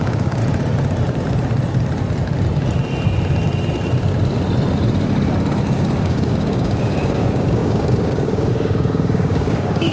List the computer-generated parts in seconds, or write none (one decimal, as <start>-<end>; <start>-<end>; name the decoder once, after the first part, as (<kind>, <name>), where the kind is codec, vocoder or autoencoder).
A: 0.0-0.4 (codec, DAC); 5.6-9.9